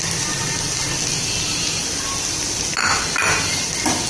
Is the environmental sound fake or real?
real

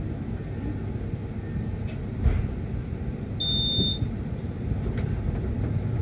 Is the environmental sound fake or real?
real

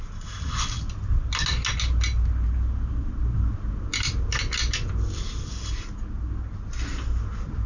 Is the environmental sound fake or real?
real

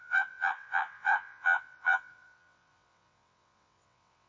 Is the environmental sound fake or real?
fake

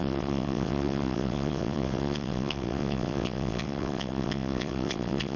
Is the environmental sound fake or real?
fake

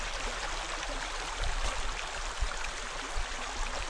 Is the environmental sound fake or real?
real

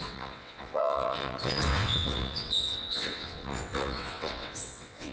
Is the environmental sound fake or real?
fake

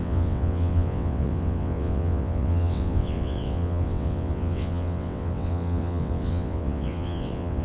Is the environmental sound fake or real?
fake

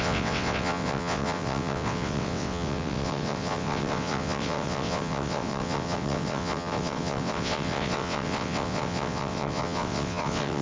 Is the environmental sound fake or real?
fake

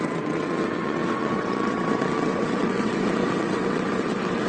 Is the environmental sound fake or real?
fake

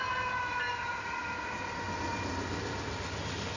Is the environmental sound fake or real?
real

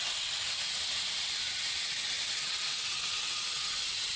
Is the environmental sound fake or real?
fake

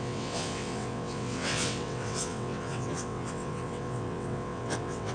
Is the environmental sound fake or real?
fake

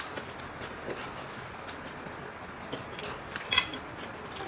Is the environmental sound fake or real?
real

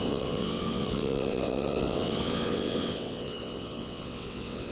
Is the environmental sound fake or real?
fake